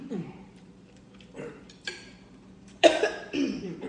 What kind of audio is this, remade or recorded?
remade